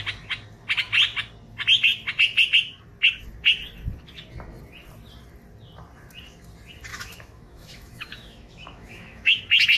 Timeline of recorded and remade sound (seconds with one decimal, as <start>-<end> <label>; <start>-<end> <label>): 0.0-6.9 recorded; 6.9-9.4 remade; 9.4-9.8 recorded